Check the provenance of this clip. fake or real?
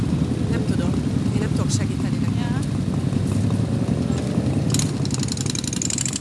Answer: real